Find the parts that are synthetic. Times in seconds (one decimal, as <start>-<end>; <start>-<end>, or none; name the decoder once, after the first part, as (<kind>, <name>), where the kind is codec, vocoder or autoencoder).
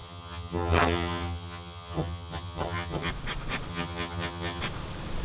0.0-3.1 (vocoder, HiFi-GAN); 3.7-4.6